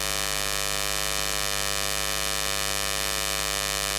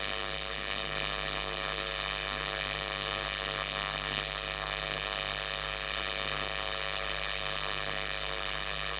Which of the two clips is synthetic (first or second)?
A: second